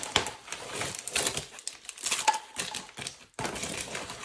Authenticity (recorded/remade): recorded